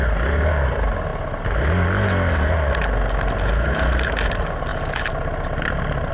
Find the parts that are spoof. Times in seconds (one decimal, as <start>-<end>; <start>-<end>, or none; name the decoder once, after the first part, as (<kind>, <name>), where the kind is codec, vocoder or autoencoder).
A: none